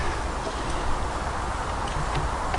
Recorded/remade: recorded